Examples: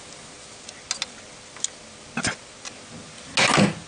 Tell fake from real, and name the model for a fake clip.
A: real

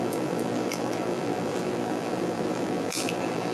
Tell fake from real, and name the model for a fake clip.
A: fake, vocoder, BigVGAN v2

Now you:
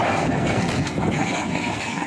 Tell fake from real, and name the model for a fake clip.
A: fake, codec, SNAC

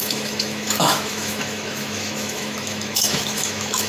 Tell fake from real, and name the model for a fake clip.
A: fake, autoencoder, DAC-VAE